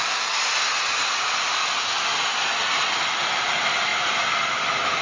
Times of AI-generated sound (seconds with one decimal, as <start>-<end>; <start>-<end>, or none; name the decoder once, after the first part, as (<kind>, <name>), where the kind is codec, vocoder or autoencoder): none